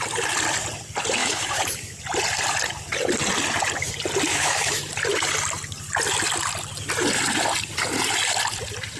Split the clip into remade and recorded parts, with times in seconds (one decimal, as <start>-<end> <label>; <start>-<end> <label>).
0.0-1.2 recorded; 1.2-2.0 remade; 2.0-4.3 recorded; 4.3-4.9 remade; 4.9-9.0 recorded